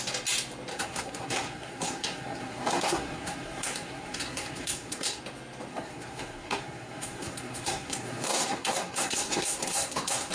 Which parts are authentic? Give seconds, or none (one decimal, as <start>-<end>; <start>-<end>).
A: 0.0-0.7; 5.2-5.7